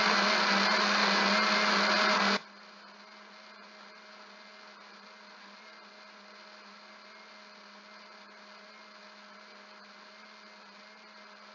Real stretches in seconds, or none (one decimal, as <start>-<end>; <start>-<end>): 0.0-11.5